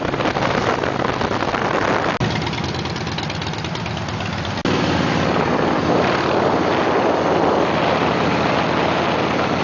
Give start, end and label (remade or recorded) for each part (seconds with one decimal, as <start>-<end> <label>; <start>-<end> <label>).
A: 0.0-9.6 recorded